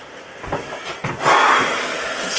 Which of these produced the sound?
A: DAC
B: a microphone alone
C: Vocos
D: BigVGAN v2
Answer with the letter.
B